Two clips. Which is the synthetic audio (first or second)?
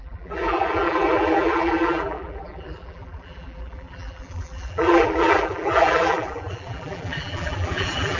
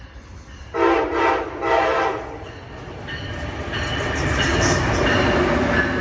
first